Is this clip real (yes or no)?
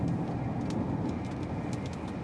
yes